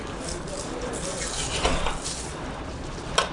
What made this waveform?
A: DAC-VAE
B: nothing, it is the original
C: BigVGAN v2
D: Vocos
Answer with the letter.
B